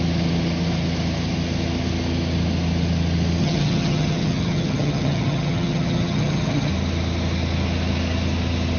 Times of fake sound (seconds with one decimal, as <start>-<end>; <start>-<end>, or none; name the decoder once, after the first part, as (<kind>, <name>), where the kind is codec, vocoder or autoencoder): 3.4-6.7 (vocoder, HiFi-GAN)